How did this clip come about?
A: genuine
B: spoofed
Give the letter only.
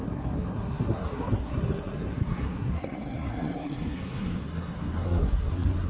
B